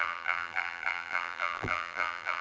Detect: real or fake fake